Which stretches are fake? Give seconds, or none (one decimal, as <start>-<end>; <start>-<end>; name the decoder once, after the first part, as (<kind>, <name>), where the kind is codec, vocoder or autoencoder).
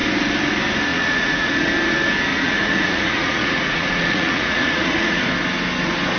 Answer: 0.9-1.7 (vocoder, Vocos); 2.3-5.2